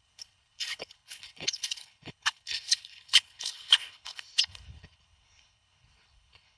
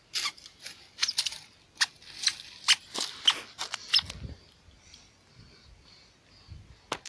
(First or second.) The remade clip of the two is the first